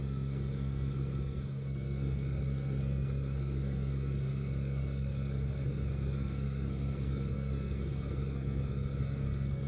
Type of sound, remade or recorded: remade